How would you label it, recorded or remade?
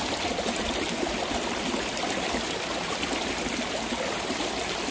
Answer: recorded